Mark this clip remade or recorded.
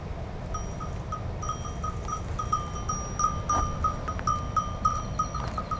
recorded